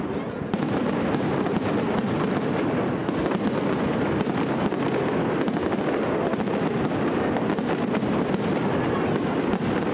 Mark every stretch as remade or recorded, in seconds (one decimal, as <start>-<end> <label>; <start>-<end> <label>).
0.0-9.9 recorded